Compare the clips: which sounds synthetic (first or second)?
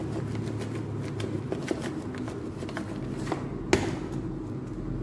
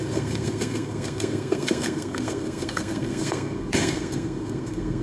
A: second